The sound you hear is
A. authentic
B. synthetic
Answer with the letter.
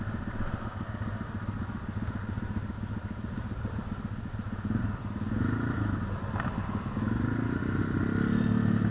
A